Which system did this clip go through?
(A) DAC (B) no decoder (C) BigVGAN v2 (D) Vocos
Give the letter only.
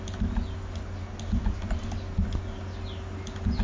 B